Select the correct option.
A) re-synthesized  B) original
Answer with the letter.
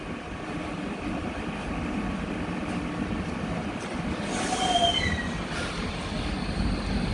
B